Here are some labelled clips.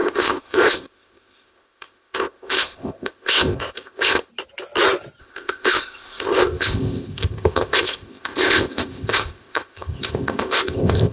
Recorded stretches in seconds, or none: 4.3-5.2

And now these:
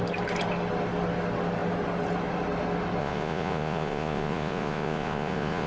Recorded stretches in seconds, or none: 0.0-3.0

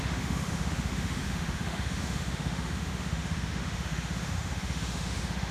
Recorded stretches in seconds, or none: none

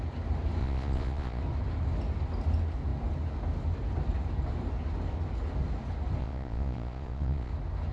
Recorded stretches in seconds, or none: 0.0-0.6; 1.4-6.2; 7.5-7.9